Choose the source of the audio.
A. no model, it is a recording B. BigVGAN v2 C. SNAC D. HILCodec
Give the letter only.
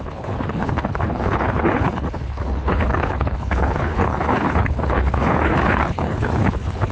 D